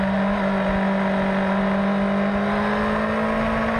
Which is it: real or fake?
real